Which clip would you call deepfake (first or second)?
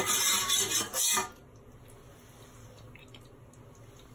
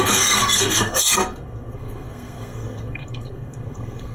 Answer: second